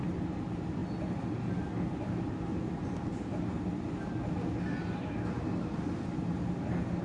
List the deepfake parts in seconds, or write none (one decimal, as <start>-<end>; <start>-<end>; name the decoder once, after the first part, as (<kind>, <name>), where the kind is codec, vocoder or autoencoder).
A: none